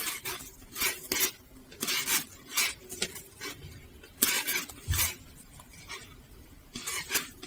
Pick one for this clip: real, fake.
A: real